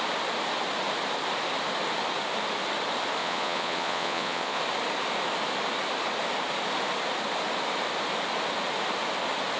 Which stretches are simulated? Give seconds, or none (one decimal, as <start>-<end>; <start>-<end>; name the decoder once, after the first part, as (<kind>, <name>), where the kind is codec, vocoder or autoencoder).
3.2-4.6 (vocoder, Vocos)